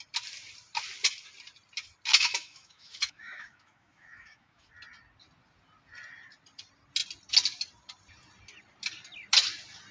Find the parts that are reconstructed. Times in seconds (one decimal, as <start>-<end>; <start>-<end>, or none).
2.1-4.7